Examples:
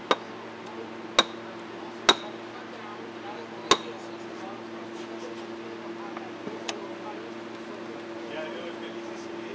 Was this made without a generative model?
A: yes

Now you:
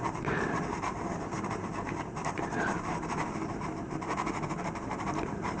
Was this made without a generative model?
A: no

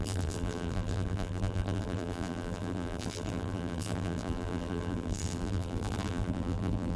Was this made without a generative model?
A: no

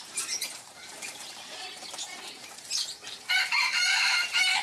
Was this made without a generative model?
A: no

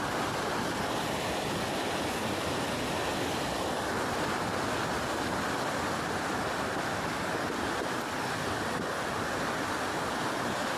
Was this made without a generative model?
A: yes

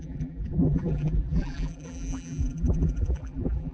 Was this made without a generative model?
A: no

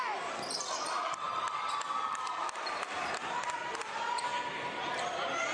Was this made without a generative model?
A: no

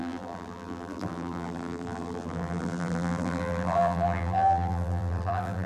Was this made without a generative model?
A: no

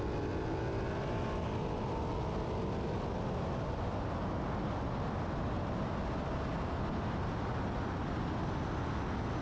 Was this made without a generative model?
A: yes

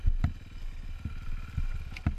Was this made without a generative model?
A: yes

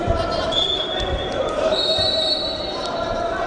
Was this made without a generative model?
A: no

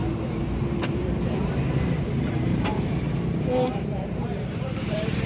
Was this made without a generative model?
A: no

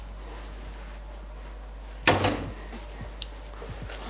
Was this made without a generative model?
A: yes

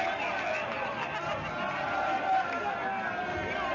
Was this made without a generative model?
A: yes